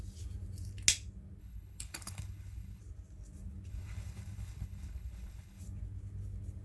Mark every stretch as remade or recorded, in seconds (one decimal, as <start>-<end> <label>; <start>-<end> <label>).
0.0-1.4 recorded; 1.4-2.8 remade; 2.8-3.7 recorded; 3.7-5.6 remade; 5.6-6.6 recorded